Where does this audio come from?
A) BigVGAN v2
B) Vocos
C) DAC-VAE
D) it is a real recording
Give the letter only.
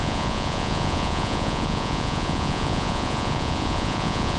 B